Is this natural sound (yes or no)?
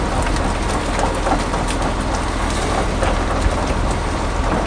yes